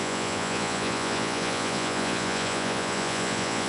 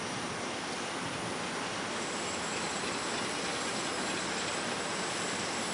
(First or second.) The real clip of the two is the second